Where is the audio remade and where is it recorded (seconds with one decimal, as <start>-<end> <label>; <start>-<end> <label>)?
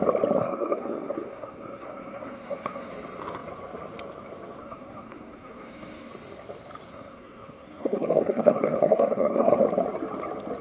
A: 0.0-0.4 recorded; 0.4-2.9 remade; 2.9-4.6 recorded; 4.6-6.1 remade; 6.1-6.9 recorded; 6.9-9.6 remade; 9.6-10.6 recorded